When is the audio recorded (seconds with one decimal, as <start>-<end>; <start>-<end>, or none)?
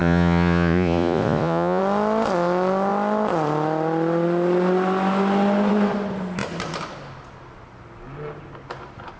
1.8-9.2